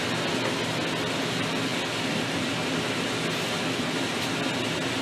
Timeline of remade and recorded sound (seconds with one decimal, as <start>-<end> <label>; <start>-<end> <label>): 0.0-5.0 recorded